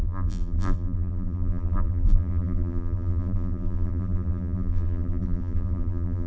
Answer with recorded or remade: remade